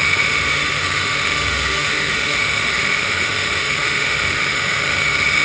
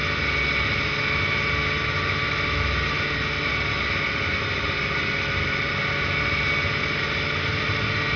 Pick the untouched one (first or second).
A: second